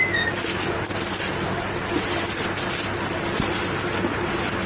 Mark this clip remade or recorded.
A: recorded